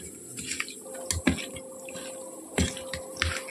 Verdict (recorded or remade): recorded